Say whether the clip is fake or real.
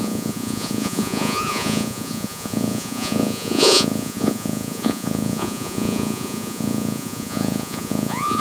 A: fake